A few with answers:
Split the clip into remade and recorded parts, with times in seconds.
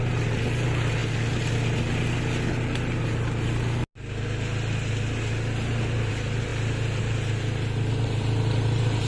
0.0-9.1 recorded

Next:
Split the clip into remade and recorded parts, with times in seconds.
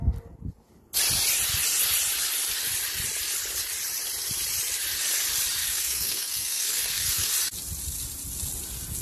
0.0-5.6 recorded; 5.6-7.3 remade; 7.3-9.0 recorded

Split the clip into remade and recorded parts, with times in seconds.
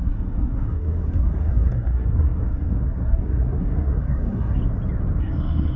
0.0-4.6 remade; 4.6-5.2 recorded; 5.2-5.8 remade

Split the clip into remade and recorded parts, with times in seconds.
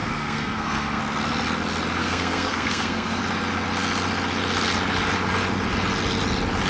0.0-1.0 remade; 1.0-2.0 recorded; 2.0-3.2 remade; 3.2-6.7 recorded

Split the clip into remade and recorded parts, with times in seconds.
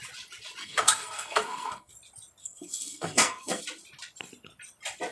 0.0-0.6 recorded; 0.6-1.9 remade; 1.9-2.4 recorded; 2.4-3.6 remade; 3.6-5.1 recorded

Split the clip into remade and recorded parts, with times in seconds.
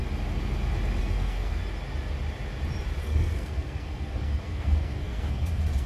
0.0-1.0 recorded; 1.0-1.6 remade; 1.6-3.0 recorded; 3.0-5.9 remade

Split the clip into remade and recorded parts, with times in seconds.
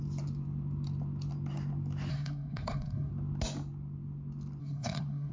0.0-2.1 recorded; 2.1-3.1 remade; 3.1-4.6 recorded; 4.6-5.3 remade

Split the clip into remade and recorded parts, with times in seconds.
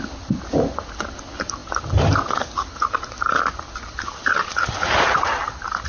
0.0-5.9 recorded